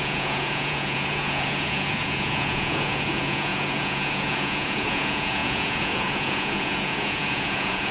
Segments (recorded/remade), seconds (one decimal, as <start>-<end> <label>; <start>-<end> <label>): 0.0-7.9 remade

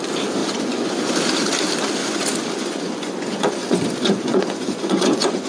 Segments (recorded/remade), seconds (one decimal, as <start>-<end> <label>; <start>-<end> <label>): 0.0-0.4 recorded; 0.4-1.1 remade; 1.1-2.0 recorded; 2.0-5.5 remade

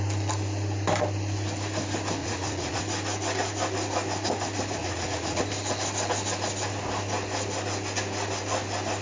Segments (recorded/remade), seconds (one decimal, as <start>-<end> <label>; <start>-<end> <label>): 0.0-2.2 recorded; 2.2-2.8 remade; 2.8-4.8 recorded; 4.8-5.4 remade; 5.4-9.0 recorded

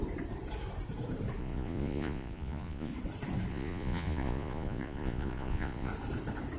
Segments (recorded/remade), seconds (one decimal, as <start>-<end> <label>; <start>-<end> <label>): 0.0-1.4 recorded; 1.4-2.9 remade; 2.9-3.5 recorded; 3.5-5.9 remade; 5.9-6.6 recorded